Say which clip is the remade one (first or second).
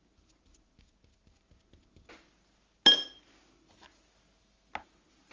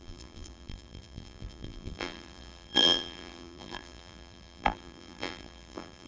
second